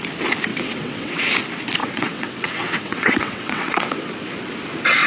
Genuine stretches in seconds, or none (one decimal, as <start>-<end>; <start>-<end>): 0.0-0.5; 1.3-1.8; 4.0-5.1